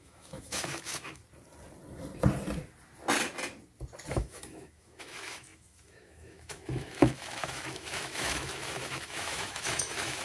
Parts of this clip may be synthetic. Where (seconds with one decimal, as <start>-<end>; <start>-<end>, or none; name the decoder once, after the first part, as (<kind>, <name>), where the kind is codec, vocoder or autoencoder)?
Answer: 0.0-1.2 (autoencoder, DAC-VAE); 4.1-10.2